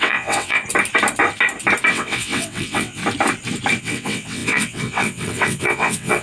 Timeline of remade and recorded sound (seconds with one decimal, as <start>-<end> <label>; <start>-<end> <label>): 0.0-0.6 remade; 0.6-1.9 recorded; 1.9-3.0 remade; 3.0-3.8 recorded; 3.8-6.2 remade